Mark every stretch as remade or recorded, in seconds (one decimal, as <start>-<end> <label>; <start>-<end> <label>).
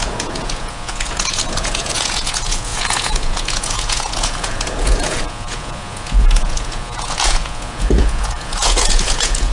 0.0-9.5 remade